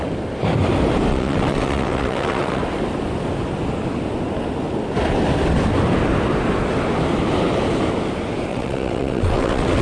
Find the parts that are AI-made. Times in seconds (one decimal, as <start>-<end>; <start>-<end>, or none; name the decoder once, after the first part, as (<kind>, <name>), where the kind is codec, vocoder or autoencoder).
1.1-2.6 (vocoder, WaveNeXt); 8.5-9.8